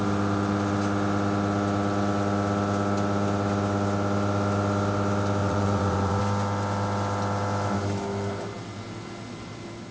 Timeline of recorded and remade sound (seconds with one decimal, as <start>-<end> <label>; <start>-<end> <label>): 0.0-5.4 recorded; 5.4-6.2 remade; 6.2-9.9 recorded